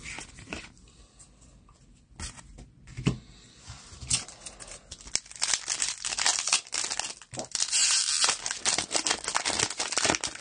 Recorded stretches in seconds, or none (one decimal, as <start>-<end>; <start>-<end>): 0.0-10.4